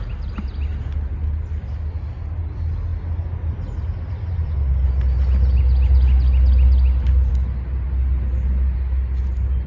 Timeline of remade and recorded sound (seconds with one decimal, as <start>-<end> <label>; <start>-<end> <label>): 0.0-9.7 recorded